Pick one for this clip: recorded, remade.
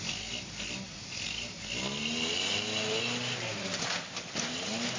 recorded